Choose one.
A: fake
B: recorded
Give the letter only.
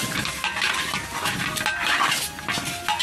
B